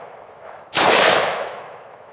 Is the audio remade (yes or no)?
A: yes